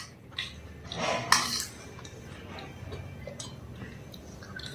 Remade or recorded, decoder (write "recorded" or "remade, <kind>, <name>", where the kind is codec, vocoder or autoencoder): recorded